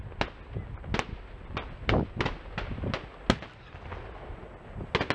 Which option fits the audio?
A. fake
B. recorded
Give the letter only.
B